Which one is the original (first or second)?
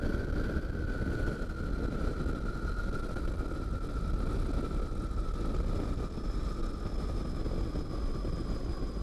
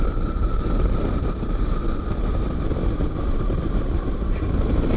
first